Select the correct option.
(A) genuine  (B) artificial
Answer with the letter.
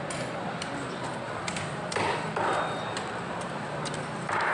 A